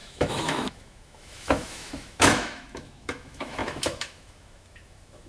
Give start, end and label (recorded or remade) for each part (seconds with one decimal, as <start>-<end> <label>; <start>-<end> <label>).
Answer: 0.0-5.3 remade